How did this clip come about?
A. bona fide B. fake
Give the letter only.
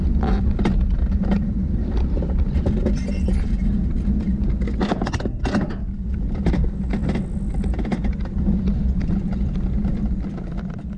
A